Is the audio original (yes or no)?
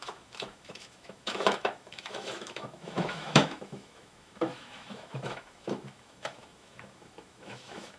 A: no